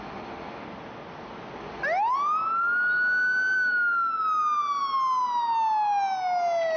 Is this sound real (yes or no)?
yes